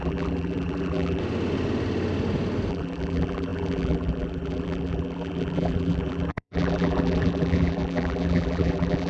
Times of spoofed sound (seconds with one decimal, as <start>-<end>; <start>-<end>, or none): 0.0-1.2; 2.7-9.1